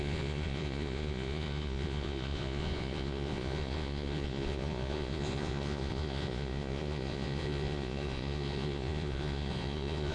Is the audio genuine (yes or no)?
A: no